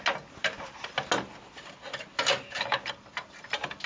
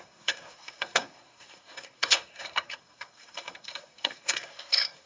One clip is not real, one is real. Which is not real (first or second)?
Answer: second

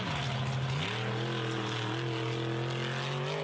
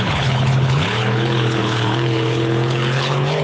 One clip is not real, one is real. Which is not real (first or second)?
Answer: second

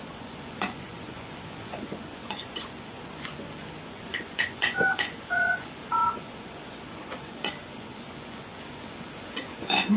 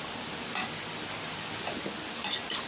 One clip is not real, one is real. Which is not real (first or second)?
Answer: first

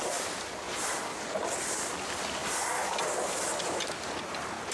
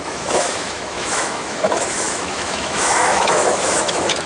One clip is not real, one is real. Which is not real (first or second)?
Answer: second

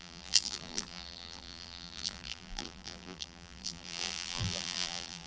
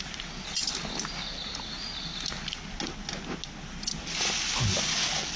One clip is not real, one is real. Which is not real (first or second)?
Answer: first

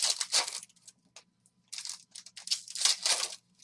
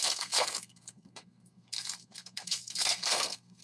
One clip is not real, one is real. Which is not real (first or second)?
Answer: second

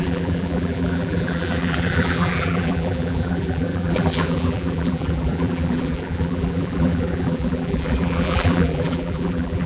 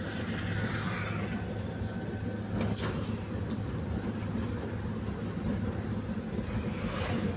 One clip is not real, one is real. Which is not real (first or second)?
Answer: first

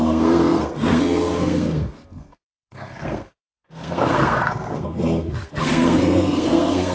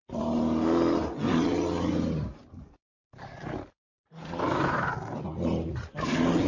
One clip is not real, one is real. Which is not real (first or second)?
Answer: first